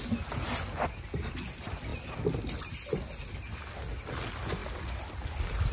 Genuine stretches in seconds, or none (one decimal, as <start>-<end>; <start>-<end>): 0.0-5.7